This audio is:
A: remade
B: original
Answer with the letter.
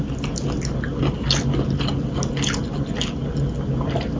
B